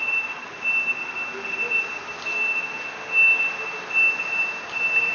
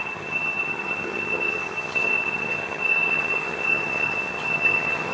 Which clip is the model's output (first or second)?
second